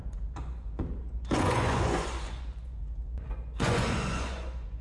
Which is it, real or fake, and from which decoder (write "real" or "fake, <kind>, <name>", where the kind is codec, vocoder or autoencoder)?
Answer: fake, vocoder, Vocos